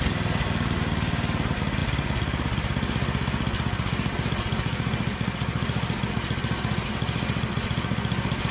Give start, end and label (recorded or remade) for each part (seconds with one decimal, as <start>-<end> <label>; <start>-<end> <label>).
0.0-8.5 recorded